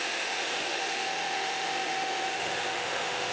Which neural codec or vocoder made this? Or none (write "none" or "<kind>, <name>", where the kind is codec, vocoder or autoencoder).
autoencoder, DAC-VAE